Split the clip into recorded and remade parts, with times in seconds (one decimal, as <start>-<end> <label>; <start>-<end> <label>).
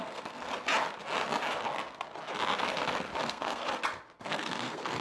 0.0-0.5 remade; 0.5-3.2 recorded; 3.2-3.6 remade; 3.6-4.2 recorded; 4.2-5.0 remade